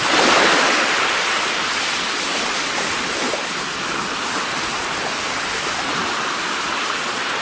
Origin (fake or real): real